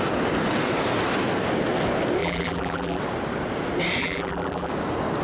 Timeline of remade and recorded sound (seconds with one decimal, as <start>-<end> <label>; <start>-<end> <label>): 0.0-2.2 recorded; 2.2-3.0 remade; 3.0-4.0 recorded; 4.0-4.7 remade; 4.7-5.2 recorded